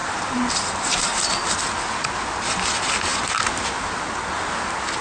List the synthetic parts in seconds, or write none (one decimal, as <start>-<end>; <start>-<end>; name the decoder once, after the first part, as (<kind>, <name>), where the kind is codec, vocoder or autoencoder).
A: 0.0-1.3 (vocoder, BigVGAN v2)

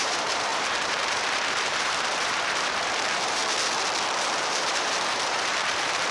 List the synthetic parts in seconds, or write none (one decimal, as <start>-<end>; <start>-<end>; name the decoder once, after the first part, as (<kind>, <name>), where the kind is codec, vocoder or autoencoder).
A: 0.0-3.4 (vocoder, BigVGAN v2); 4.2-6.1